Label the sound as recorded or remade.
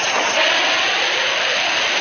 recorded